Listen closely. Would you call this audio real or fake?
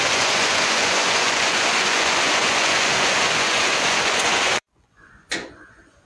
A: fake